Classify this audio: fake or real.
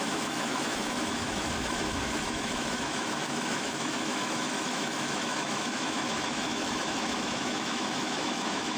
fake